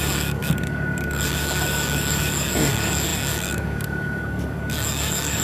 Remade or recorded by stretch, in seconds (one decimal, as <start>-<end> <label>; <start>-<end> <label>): 0.0-5.4 remade